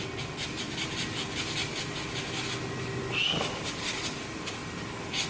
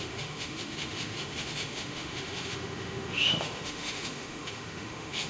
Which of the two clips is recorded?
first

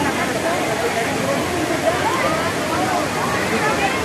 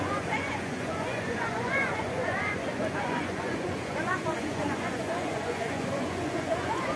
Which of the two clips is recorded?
first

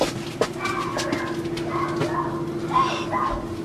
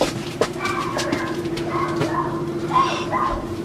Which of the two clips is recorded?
first